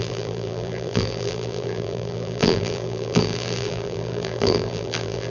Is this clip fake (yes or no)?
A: yes